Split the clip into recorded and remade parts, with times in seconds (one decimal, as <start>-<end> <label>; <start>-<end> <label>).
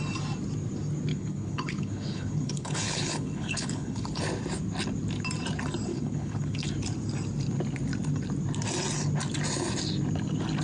0.0-1.1 recorded; 1.1-4.2 remade; 4.2-5.9 recorded; 5.9-6.7 remade; 6.7-10.6 recorded